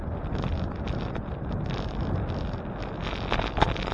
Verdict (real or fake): real